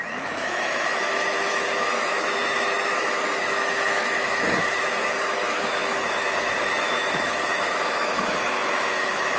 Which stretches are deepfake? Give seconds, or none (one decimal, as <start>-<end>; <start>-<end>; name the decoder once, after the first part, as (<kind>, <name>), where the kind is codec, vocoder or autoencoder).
0.0-9.4 (autoencoder, DAC-VAE)